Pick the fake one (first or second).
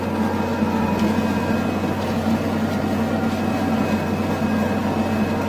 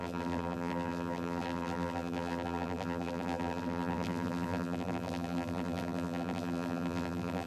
second